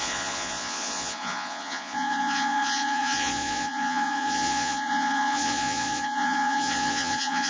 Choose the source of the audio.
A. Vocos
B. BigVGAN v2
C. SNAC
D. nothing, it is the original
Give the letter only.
A